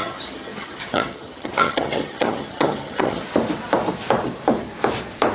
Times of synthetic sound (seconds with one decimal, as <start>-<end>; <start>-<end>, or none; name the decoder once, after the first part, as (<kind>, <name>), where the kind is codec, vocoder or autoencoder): 0.0-3.2 (vocoder, HiFi-GAN)